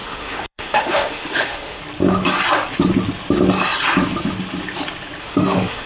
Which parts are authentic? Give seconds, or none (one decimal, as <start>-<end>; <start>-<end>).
1.8-5.2